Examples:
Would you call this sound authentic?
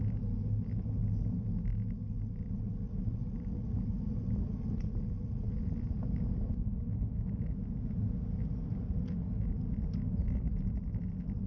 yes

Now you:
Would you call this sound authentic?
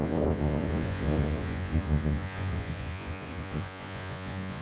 no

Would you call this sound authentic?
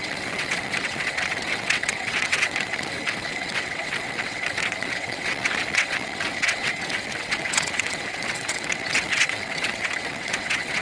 no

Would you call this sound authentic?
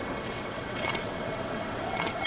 no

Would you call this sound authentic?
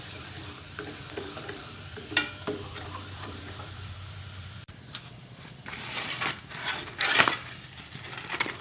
no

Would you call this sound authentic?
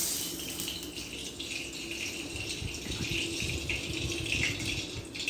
yes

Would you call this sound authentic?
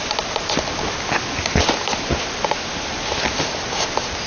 yes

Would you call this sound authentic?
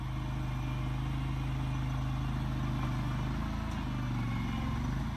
yes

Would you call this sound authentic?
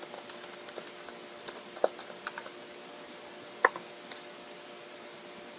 yes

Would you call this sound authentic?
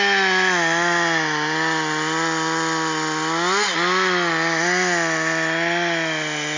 yes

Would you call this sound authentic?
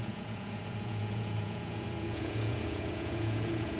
no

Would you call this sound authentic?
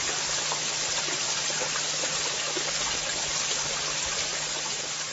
yes